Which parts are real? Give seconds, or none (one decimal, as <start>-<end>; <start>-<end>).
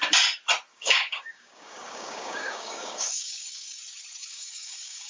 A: 0.0-0.7; 3.8-4.2